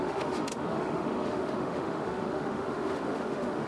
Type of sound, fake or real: fake